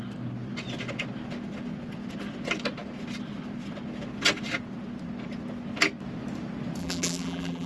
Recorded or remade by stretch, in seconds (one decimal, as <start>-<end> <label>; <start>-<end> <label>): 0.0-6.8 recorded; 6.8-7.7 remade